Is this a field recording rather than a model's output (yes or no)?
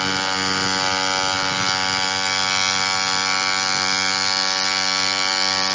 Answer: yes